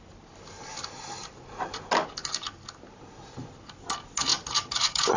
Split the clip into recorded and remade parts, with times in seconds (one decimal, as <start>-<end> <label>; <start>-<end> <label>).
0.0-5.2 recorded